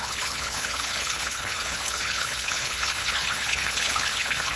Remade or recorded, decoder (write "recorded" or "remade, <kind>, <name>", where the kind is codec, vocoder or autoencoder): remade, codec, HILCodec